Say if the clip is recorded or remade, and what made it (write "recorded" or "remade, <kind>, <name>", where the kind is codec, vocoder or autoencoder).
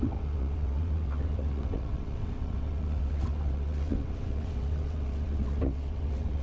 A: remade, vocoder, WaveNeXt